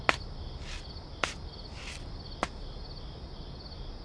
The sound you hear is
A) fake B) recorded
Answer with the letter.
B